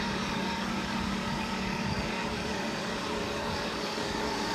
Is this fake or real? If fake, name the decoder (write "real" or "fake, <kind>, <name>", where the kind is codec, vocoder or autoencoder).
fake, codec, DAC